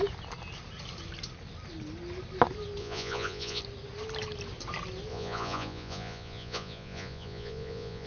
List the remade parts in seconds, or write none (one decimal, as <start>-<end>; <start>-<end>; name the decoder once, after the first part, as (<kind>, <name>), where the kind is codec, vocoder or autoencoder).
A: 2.8-3.6 (vocoder, Vocos); 5.1-8.1